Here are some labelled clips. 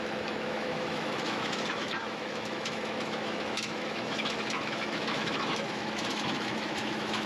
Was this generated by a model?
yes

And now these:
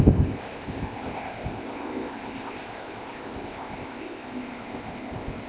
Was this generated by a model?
yes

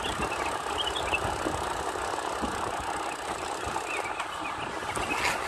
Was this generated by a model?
no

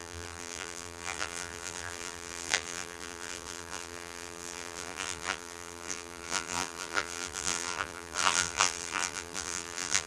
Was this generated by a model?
yes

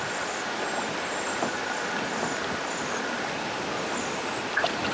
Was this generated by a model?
no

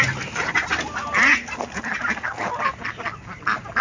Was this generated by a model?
no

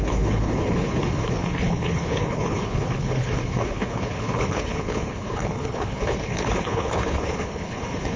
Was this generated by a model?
yes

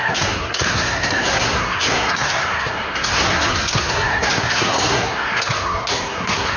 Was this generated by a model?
yes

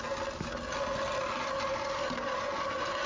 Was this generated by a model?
no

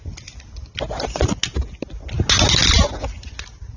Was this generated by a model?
no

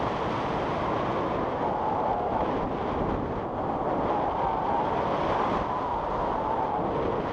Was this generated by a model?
no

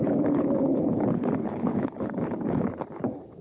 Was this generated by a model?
yes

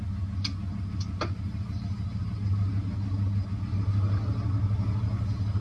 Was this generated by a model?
no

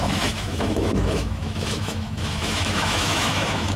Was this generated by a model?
yes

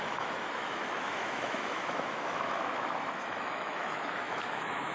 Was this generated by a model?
yes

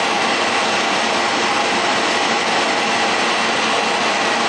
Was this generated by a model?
no